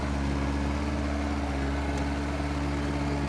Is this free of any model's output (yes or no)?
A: yes